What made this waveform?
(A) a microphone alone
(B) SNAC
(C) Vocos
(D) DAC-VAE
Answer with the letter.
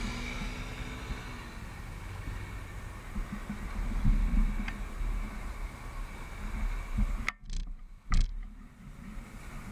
A